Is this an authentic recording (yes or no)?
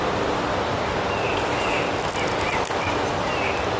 yes